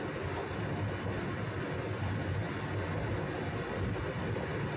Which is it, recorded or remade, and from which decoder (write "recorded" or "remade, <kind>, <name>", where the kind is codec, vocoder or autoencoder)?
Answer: recorded